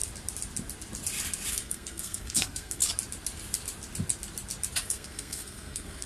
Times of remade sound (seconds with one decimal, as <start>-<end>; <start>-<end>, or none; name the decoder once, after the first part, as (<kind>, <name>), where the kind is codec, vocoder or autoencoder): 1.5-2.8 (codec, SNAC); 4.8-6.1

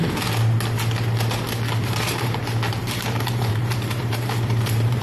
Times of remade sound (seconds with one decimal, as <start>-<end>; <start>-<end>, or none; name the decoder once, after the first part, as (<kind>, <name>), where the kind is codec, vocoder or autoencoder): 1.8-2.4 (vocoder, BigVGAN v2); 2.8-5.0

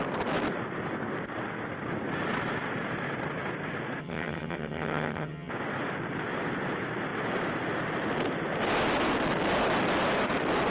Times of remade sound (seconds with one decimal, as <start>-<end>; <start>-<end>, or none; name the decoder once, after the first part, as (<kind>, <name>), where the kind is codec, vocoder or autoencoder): 4.0-5.5 (vocoder, HiFi-GAN)